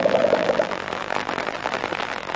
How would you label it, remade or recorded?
remade